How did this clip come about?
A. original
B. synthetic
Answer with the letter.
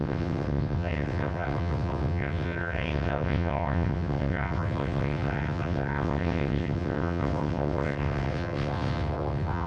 B